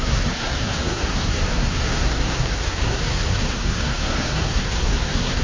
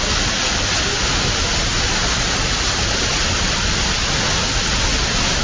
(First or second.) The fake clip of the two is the first